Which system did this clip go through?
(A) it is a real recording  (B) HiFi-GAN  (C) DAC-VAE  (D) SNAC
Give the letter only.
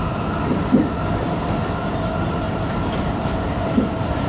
A